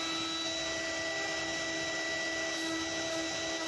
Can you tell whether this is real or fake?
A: real